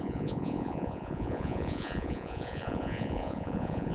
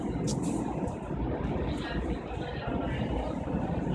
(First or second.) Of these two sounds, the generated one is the first